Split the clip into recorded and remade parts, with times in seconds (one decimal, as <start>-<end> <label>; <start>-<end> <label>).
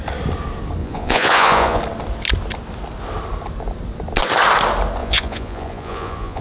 0.0-0.8 recorded; 0.8-1.8 remade; 1.8-5.0 recorded; 5.0-6.4 remade